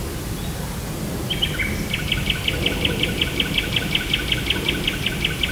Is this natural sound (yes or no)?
yes